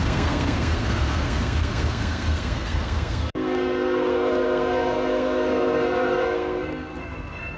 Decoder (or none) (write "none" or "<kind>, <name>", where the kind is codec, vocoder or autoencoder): codec, SNAC